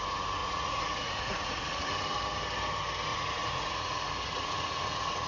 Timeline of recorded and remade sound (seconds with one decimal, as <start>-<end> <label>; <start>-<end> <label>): 0.0-0.4 recorded; 0.4-1.9 remade; 1.9-3.1 recorded; 3.1-5.3 remade